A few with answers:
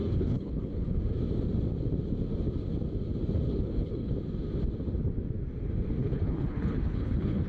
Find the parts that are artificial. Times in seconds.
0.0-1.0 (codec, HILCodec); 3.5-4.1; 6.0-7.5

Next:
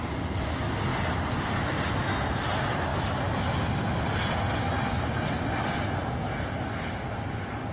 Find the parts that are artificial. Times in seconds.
none

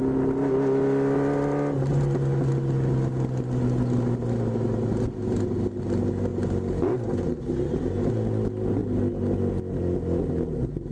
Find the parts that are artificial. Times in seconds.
none

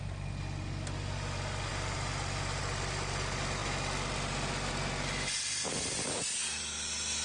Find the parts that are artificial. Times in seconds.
1.7-2.6 (vocoder, BigVGAN v2)

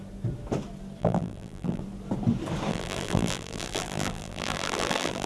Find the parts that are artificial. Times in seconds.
1.0-1.8 (vocoder, BigVGAN v2); 2.7-5.3

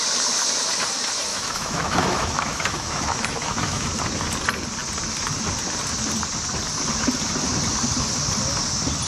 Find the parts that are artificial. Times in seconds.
1.3-4.0 (autoencoder, DAC-VAE)

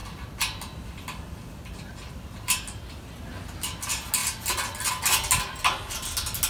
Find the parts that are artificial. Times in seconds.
none